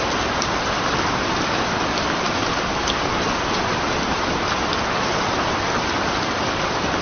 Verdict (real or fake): real